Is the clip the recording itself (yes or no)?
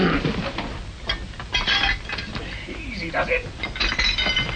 yes